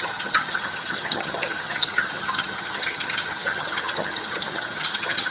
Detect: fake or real fake